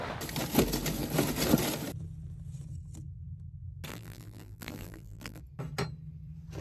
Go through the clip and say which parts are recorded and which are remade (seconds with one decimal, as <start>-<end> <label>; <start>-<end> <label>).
0.0-3.9 recorded; 3.9-5.4 remade; 5.4-6.6 recorded